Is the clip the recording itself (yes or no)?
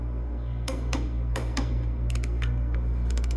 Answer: no